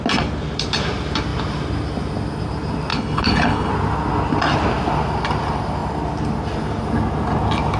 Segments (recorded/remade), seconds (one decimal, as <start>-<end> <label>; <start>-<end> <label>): 0.0-2.9 recorded; 2.9-3.7 remade; 3.7-7.8 recorded